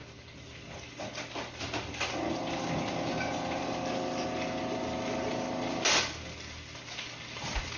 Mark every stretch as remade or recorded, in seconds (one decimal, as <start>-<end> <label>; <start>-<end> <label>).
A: 0.0-7.8 recorded